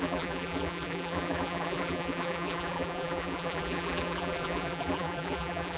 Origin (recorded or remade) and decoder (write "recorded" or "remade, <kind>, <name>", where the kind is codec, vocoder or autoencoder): remade, vocoder, BigVGAN v2